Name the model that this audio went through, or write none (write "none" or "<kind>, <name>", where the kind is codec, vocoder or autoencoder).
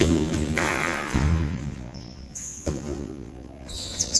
vocoder, Vocos